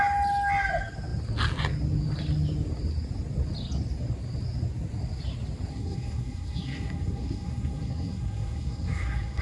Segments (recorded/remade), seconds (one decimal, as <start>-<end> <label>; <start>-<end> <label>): 0.0-5.7 recorded; 5.7-9.4 remade